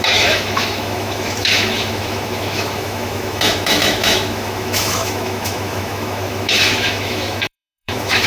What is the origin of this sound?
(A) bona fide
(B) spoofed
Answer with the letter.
B